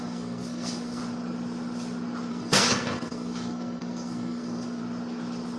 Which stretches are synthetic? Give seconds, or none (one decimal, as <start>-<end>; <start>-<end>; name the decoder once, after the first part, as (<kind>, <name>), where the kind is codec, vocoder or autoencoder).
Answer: 0.0-1.0 (codec, SNAC); 2.3-4.8